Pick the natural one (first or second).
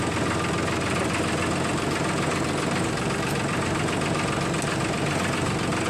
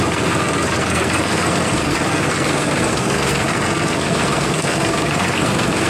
first